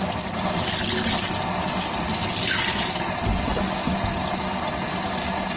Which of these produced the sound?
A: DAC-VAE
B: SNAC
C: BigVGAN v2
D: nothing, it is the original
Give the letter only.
D